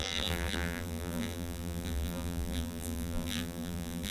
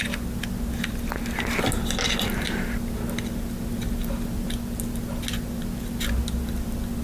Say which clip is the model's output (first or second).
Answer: first